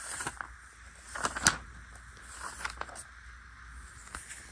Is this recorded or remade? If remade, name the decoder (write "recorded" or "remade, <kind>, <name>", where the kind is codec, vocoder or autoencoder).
recorded